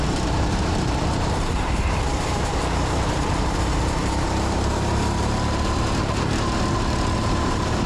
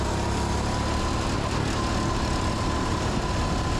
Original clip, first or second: second